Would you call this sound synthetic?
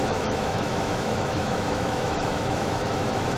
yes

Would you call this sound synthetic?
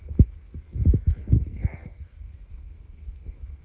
yes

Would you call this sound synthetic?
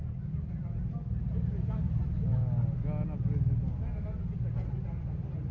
no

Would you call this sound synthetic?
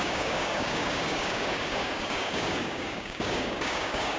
yes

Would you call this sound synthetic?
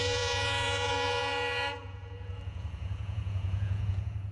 yes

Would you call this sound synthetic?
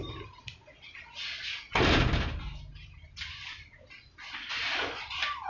no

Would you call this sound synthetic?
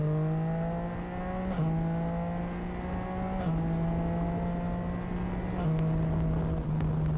no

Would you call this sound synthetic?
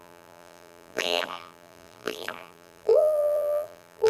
yes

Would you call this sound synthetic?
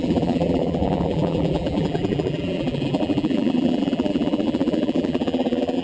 yes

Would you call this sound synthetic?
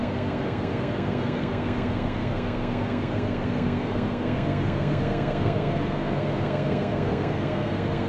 yes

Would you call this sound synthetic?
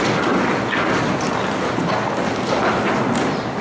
no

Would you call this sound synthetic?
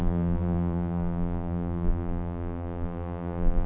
yes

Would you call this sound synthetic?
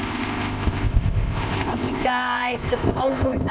yes